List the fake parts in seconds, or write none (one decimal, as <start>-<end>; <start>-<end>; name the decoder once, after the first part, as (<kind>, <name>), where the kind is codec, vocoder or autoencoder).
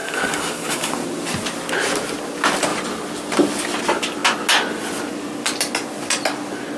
0.0-0.9 (codec, DAC)